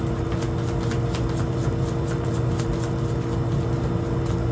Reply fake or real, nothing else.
real